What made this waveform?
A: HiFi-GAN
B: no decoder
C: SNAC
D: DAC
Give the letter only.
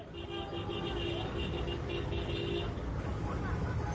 B